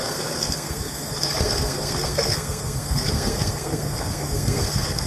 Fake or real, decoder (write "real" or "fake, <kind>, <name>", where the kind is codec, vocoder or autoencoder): fake, codec, SNAC